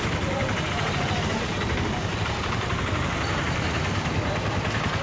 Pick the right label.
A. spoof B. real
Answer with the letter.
A